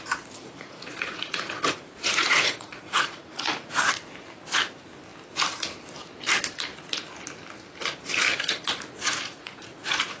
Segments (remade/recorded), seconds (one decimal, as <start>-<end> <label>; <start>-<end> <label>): 0.0-0.4 recorded; 0.4-3.8 remade; 3.8-9.0 recorded; 9.0-10.2 remade